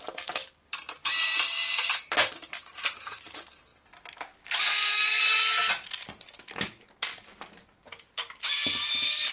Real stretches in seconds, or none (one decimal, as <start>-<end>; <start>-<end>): 1.0-1.9; 3.7-8.0